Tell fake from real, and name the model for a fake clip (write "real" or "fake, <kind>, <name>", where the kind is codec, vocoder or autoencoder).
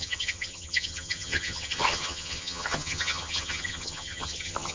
fake, vocoder, HiFi-GAN